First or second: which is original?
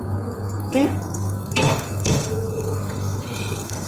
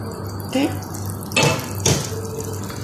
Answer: second